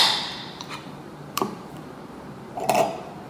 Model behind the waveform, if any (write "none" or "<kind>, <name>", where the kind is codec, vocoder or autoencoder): vocoder, BigVGAN v2